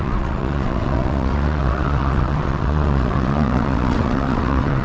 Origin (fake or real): fake